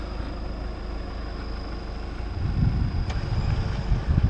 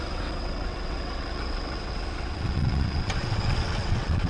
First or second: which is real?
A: first